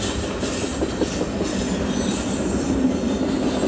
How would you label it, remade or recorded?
recorded